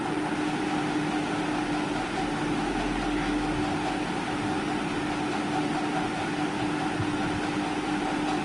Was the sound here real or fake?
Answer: real